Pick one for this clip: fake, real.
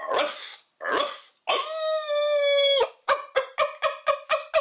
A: real